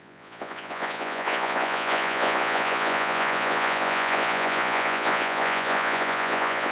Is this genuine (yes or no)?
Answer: no